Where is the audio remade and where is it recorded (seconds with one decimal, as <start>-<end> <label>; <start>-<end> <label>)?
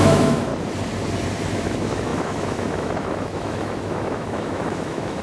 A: 0.0-0.5 remade; 0.5-1.5 recorded; 1.5-5.2 remade